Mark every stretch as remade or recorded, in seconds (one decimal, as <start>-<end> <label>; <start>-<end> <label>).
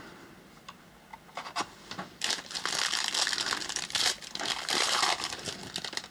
0.0-6.1 recorded